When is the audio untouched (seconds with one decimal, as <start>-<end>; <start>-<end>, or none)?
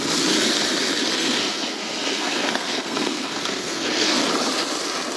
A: 0.0-1.1; 4.2-5.2